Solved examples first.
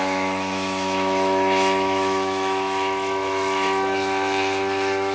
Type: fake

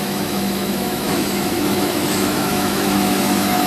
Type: fake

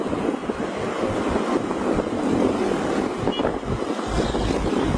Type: real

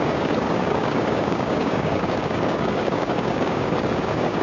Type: fake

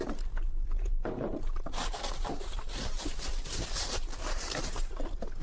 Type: fake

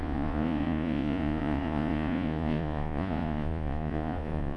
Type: fake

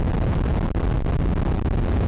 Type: real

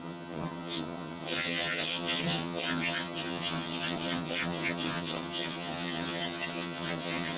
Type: fake